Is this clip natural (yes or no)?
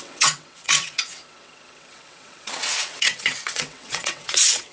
no